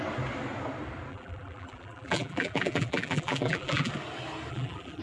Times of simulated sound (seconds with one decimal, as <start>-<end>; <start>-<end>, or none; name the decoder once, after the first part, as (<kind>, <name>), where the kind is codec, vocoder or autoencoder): 1.1-3.9 (vocoder, BigVGAN v2); 4.5-5.0

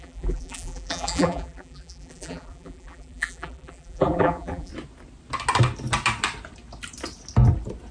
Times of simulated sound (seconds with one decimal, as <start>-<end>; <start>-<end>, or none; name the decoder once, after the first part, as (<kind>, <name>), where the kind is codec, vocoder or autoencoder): 0.0-4.7 (vocoder, BigVGAN v2)

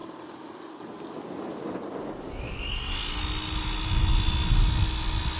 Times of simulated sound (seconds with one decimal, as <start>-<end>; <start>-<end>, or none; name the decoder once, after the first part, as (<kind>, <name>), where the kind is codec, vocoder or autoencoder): none

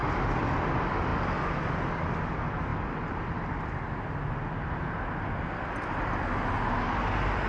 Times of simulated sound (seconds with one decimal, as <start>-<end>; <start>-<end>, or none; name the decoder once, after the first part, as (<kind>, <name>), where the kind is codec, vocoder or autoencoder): none

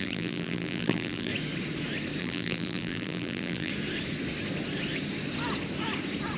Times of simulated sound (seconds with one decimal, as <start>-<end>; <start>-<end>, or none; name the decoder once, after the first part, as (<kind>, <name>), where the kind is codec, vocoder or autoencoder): 0.0-1.3 (vocoder, BigVGAN v2); 2.2-3.7

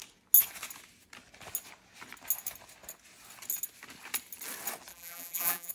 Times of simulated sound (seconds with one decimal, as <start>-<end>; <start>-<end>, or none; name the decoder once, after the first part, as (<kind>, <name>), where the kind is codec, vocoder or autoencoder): 4.9-5.7 (vocoder, BigVGAN v2)

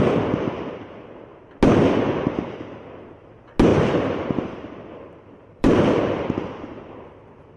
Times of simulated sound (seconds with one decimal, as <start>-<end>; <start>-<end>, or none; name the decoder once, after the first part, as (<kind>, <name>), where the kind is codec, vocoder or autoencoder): 3.7-6.9 (vocoder, BigVGAN v2)

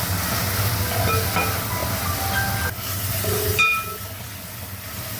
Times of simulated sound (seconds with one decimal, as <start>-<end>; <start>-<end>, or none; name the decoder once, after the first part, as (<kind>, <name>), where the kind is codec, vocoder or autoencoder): none